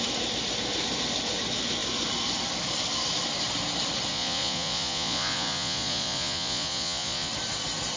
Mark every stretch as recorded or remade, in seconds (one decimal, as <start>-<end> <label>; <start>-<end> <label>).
0.0-4.1 recorded; 4.1-7.3 remade; 7.3-8.0 recorded